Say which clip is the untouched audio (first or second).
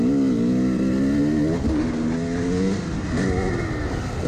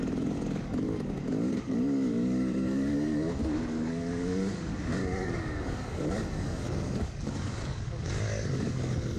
first